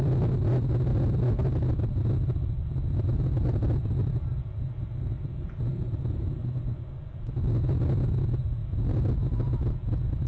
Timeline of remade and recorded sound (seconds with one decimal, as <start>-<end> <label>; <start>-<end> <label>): 0.0-6.4 recorded; 6.4-7.1 remade; 7.1-10.3 recorded